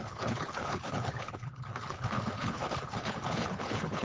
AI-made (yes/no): yes